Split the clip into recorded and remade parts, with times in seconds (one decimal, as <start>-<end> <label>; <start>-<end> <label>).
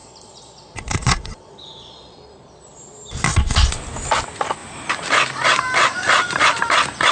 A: 0.0-2.1 remade; 2.1-3.3 recorded; 3.3-3.8 remade; 3.8-7.1 recorded